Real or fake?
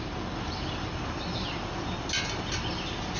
real